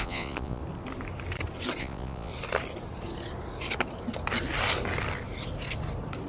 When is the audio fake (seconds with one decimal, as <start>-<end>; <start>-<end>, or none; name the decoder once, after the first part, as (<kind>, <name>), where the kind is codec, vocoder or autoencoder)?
0.0-0.6 (vocoder, Vocos); 1.8-2.3